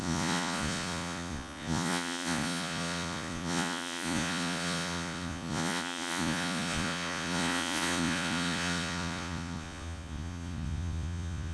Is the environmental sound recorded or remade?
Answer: remade